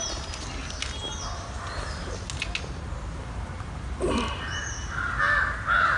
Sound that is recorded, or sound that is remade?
recorded